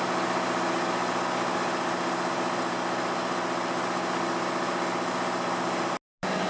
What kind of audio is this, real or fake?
real